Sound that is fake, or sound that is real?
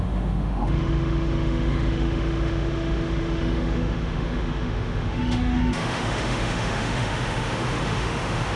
fake